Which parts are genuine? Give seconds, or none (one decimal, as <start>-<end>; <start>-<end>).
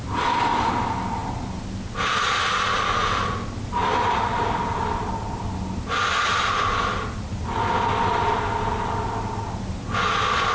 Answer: 0.0-10.5